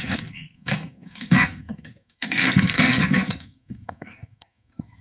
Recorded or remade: remade